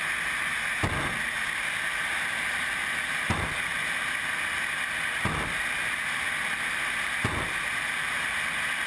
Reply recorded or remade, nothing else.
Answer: recorded